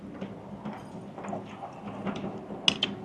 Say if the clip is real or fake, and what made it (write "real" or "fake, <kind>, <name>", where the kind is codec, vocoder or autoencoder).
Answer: real